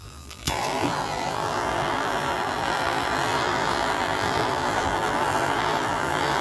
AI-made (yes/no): yes